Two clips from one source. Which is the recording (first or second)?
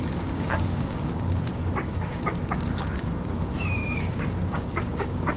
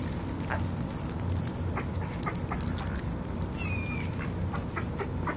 second